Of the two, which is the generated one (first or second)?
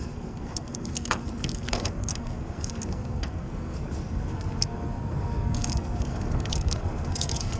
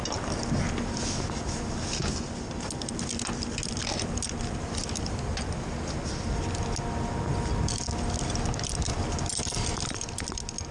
first